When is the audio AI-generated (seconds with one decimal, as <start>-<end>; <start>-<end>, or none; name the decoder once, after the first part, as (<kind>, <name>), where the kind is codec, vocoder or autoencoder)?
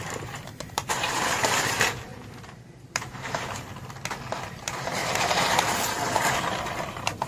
0.0-3.7 (vocoder, BigVGAN v2); 4.6-7.3